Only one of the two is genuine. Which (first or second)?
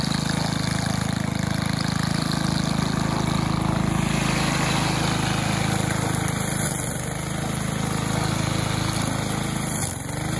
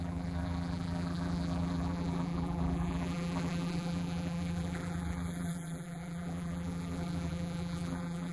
first